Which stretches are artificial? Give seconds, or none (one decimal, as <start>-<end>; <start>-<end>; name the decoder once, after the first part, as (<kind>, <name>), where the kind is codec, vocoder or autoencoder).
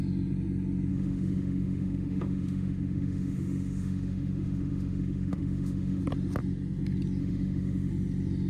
0.9-6.0 (autoencoder, DAC-VAE); 7.2-7.9